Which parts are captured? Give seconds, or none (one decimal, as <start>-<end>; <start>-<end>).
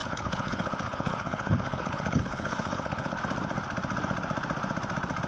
3.2-5.3